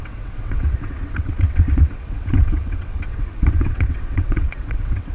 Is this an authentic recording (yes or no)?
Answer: no